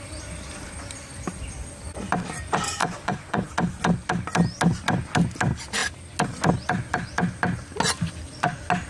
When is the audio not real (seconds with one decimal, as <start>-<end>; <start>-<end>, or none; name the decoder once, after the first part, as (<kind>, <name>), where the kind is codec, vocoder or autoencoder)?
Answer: 2.8-3.5 (vocoder, Vocos)